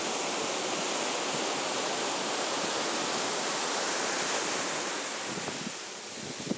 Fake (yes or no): no